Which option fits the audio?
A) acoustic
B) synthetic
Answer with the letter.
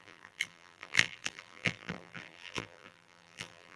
B